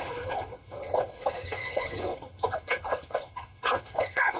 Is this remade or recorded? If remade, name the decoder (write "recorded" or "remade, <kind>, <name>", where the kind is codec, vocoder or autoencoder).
remade, codec, HILCodec